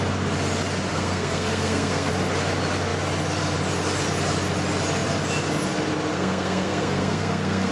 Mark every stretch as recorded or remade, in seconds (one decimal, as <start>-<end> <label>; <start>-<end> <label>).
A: 0.0-0.9 recorded; 0.9-2.1 remade; 2.1-6.1 recorded; 6.1-7.7 remade